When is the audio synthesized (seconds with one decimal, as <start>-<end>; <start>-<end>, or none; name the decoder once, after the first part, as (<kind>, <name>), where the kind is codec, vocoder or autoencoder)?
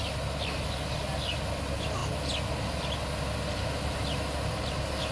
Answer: none